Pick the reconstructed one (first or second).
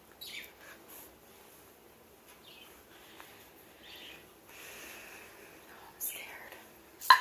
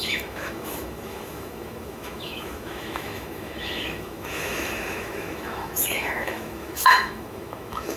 second